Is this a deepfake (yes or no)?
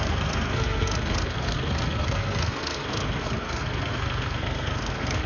yes